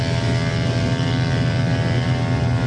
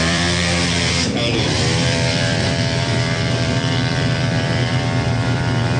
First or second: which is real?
first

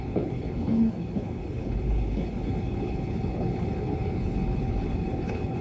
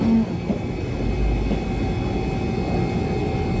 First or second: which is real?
second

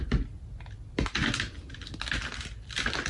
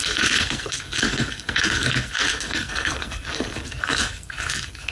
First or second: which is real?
first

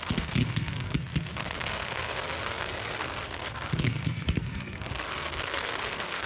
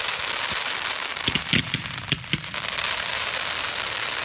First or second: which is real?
second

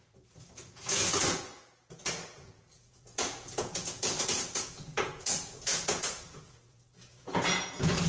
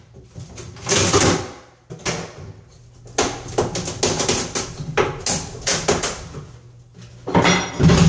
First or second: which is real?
second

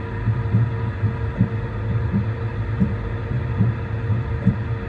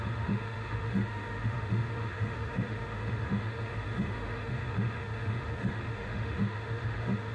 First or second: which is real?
first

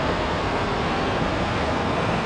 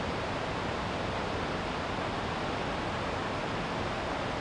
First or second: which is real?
second